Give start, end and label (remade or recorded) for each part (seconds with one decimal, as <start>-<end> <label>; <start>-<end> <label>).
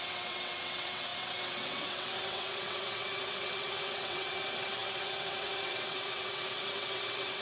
0.0-7.4 remade